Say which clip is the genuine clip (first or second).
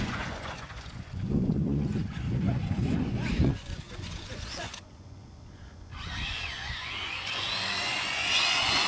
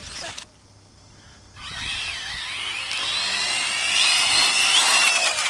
second